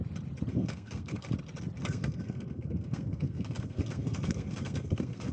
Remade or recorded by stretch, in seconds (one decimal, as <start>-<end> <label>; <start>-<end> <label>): 0.0-0.5 recorded; 0.5-1.2 remade; 1.2-1.8 recorded; 1.8-5.3 remade